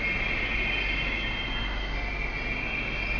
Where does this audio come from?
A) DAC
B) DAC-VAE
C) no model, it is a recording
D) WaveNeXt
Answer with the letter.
C